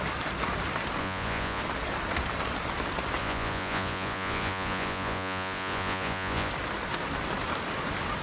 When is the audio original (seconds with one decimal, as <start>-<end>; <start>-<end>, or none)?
0.0-1.0; 1.6-3.2; 6.5-8.2